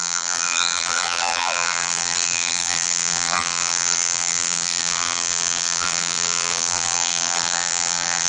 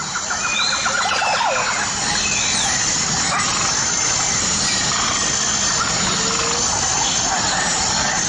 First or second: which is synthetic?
first